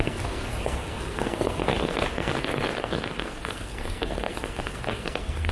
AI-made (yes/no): yes